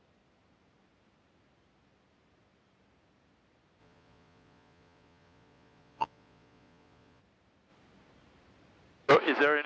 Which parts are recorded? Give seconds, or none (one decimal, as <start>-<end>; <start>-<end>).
0.0-3.8; 7.2-9.7